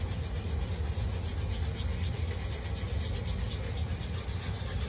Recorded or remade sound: recorded